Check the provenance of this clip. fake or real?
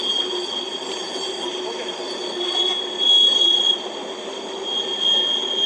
real